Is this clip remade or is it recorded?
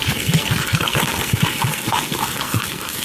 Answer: remade